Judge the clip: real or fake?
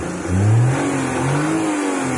real